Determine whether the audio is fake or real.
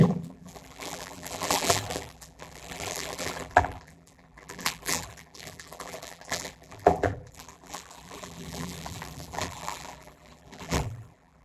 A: fake